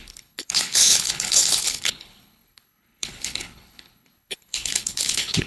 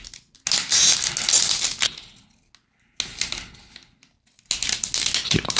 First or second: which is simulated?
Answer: first